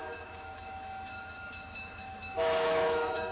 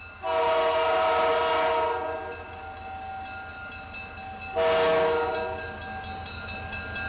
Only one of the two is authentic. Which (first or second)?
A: second